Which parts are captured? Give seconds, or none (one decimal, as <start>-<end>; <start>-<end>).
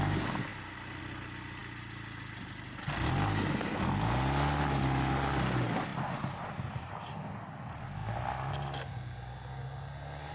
0.0-10.3